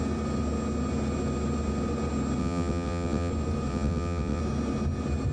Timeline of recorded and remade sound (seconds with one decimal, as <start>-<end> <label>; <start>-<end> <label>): 0.0-2.4 recorded; 2.4-3.3 remade; 3.3-3.7 recorded; 3.7-4.4 remade; 4.4-5.3 recorded